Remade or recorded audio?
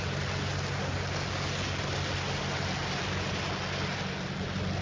recorded